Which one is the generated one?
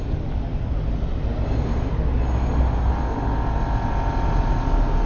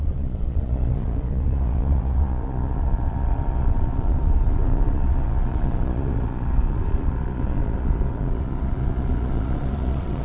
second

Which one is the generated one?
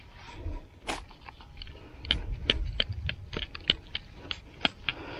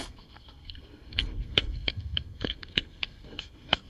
second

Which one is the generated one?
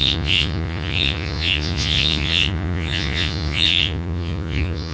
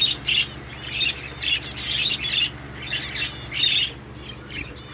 first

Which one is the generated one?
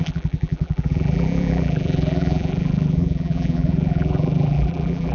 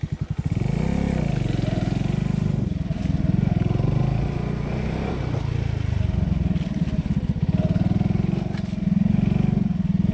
first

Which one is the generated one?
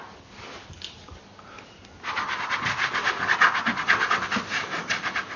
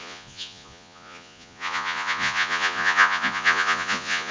second